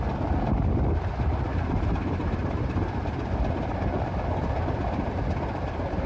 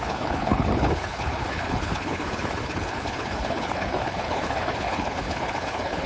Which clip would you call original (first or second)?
first